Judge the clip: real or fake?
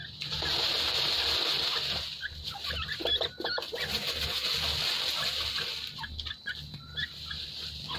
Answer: real